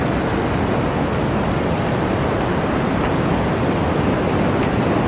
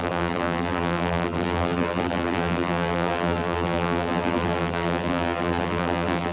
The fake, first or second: second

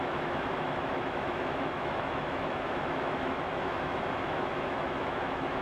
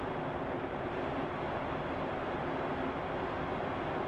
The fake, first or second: first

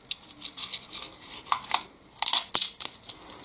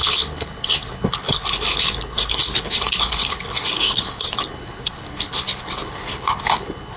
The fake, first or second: second